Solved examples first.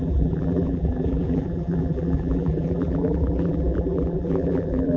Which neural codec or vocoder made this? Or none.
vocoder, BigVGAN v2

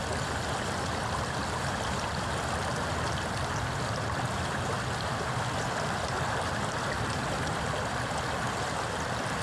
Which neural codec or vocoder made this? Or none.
none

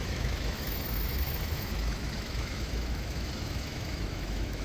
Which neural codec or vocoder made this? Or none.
autoencoder, DAC-VAE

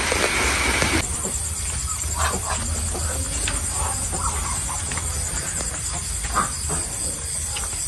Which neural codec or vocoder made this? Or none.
none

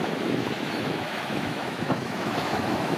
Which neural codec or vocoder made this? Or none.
autoencoder, DAC-VAE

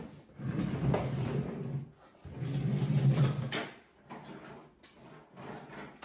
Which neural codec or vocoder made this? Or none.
none